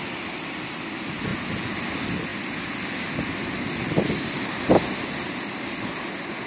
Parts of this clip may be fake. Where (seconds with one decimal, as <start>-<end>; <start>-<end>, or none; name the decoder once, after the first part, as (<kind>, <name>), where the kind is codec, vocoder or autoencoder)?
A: none